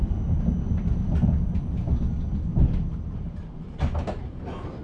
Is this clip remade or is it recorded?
recorded